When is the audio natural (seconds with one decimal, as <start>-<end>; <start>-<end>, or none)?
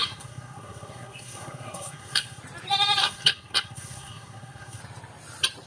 2.4-3.0; 4.8-5.7